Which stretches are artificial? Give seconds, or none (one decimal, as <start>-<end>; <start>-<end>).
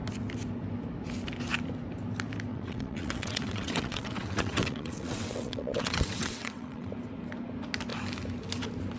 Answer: 2.5-6.9